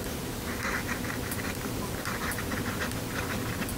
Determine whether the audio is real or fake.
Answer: real